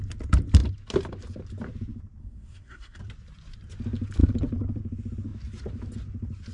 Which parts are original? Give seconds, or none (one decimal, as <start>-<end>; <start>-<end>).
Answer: 0.0-2.2; 3.0-6.5